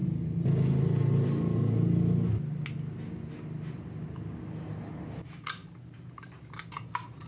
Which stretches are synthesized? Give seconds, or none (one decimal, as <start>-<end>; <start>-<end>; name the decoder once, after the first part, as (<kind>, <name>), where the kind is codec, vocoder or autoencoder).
none

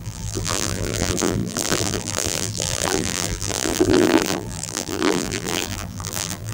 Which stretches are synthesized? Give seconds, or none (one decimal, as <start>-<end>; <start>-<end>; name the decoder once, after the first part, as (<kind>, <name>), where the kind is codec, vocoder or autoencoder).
0.0-6.5 (vocoder, BigVGAN v2)

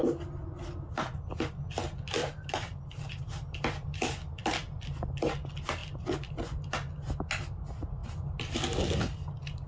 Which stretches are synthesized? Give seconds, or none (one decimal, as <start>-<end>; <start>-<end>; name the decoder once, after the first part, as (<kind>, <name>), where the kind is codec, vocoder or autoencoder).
2.2-3.2 (vocoder, BigVGAN v2)

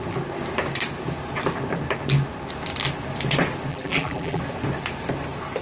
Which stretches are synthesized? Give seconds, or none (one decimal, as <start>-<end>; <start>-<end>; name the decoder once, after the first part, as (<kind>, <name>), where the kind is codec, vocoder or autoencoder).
3.7-4.4 (vocoder, BigVGAN v2)